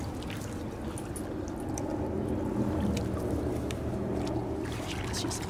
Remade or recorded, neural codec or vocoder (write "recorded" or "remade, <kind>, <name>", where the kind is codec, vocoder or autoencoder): recorded